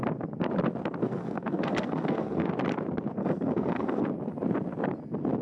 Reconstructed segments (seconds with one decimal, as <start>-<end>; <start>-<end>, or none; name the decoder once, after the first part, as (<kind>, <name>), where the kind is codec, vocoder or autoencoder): 1.0-2.5 (codec, SNAC); 3.2-4.0